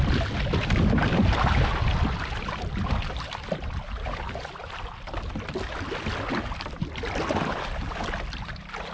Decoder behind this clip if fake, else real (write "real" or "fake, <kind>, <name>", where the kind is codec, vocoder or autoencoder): real